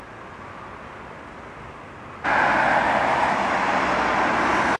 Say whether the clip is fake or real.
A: real